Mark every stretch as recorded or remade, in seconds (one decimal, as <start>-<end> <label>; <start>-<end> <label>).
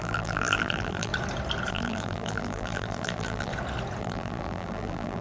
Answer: 0.0-1.1 remade; 1.1-1.7 recorded; 1.7-3.5 remade; 3.5-4.0 recorded; 4.0-5.2 remade